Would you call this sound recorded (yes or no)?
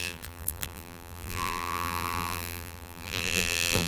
no